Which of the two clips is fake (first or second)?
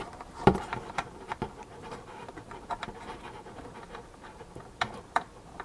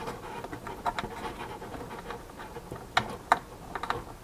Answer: first